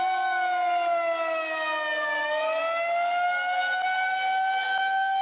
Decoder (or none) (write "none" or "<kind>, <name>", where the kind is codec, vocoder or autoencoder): none